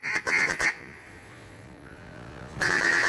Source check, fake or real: fake